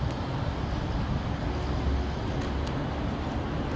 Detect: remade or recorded recorded